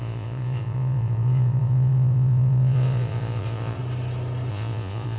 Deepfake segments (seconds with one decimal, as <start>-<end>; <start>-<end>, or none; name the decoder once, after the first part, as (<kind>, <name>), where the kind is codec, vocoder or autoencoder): 0.0-3.8 (vocoder, Vocos); 4.5-5.2

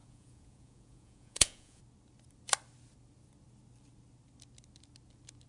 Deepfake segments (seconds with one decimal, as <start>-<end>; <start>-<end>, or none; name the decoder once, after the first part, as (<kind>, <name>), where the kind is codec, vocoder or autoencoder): 0.0-1.8 (vocoder, Vocos)

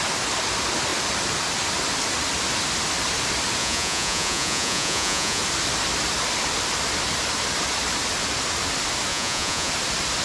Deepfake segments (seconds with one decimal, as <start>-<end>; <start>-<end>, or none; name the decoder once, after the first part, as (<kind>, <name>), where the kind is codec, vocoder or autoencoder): 3.6-5.4 (vocoder, Vocos); 9.1-9.7

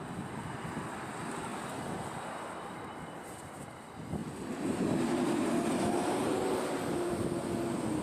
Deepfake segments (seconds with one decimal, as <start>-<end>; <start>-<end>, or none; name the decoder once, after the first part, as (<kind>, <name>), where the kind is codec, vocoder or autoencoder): none

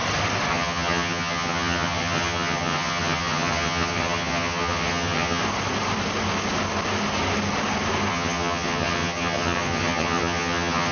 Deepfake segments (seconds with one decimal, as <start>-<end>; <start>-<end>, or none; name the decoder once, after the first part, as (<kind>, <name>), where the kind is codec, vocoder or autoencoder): 0.5-5.4 (vocoder, HiFi-GAN); 8.1-10.9

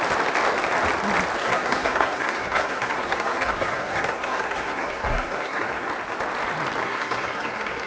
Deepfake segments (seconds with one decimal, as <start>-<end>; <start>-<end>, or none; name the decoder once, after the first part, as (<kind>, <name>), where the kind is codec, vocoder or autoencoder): 1.4-5.9 (codec, SNAC); 6.8-7.9

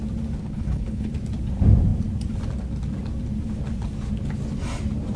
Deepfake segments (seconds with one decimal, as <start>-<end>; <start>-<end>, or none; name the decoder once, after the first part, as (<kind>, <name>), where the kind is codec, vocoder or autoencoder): 0.4-1.1 (codec, HILCodec)